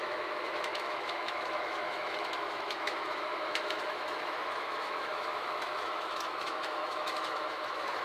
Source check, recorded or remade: remade